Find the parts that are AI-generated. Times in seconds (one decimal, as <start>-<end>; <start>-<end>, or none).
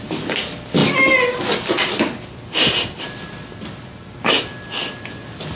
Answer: none